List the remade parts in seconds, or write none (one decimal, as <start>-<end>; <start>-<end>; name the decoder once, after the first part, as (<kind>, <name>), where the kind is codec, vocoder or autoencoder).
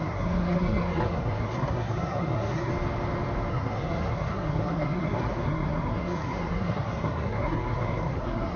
0.0-2.7 (codec, SNAC); 3.5-8.6